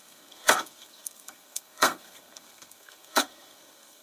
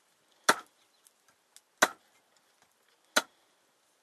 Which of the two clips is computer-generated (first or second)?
first